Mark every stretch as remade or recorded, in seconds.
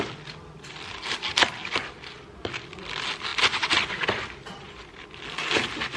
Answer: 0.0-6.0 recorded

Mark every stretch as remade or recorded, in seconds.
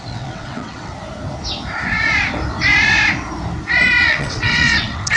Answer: 0.0-0.9 remade; 0.9-4.0 recorded; 4.0-5.2 remade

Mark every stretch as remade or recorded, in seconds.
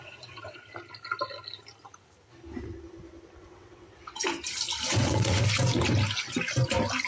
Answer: 0.0-0.6 remade; 0.6-3.4 recorded; 3.4-4.2 remade; 4.2-4.9 recorded; 4.9-5.4 remade; 5.4-7.1 recorded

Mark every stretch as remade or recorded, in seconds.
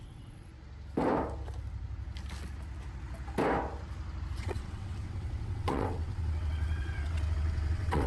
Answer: 0.0-0.5 remade; 0.5-4.4 recorded; 4.4-8.1 remade